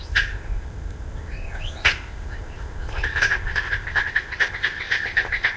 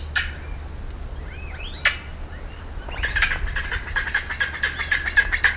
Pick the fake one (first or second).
first